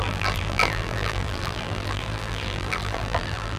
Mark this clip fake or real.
fake